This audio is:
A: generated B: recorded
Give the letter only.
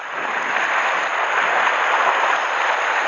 B